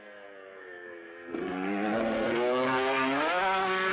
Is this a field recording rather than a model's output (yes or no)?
no